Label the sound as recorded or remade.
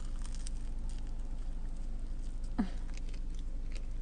recorded